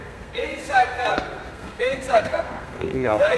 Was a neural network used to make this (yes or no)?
yes